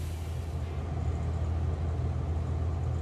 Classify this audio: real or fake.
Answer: real